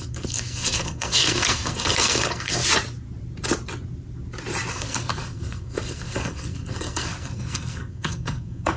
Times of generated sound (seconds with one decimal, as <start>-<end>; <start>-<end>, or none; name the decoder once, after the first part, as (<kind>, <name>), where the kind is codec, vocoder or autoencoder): 0.0-2.6 (codec, SNAC); 4.7-8.8